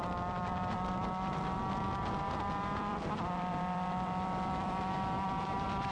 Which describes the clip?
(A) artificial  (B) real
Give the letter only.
A